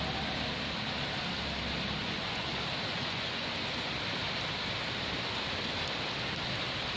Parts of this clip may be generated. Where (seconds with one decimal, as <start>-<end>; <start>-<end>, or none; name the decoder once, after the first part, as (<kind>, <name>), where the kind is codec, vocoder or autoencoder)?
2.0-2.5 (vocoder, Vocos); 2.9-3.5